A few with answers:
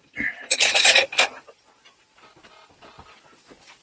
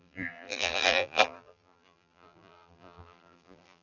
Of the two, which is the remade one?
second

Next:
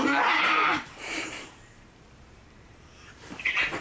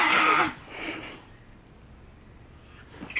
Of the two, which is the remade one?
first